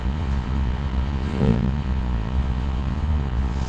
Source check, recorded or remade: remade